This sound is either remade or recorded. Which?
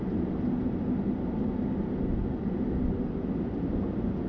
recorded